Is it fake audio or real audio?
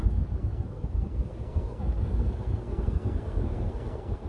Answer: fake